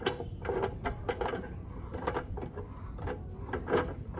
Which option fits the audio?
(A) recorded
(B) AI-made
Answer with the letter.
A